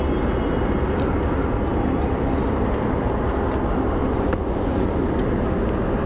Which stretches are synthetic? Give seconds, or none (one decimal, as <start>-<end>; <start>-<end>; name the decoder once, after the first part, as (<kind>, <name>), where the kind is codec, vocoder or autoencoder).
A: 4.0-4.9 (vocoder, Vocos)